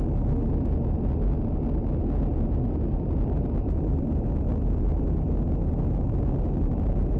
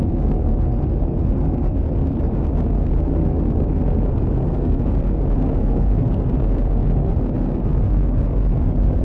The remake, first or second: second